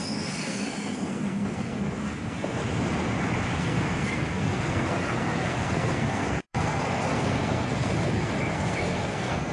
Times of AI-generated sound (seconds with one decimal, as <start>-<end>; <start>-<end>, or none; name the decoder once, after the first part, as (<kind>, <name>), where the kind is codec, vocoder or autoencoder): 0.0-2.6 (codec, SNAC); 3.6-9.5